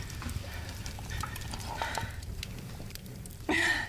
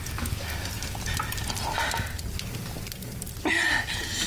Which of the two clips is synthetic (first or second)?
first